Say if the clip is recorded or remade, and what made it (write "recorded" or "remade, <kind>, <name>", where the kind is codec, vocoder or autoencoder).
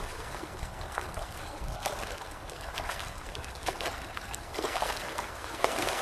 remade, codec, SNAC